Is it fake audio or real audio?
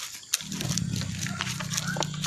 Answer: real